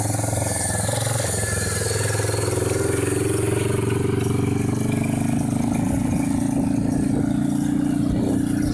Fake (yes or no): no